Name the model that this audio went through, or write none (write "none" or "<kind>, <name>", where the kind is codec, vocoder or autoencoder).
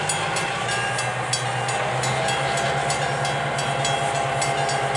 none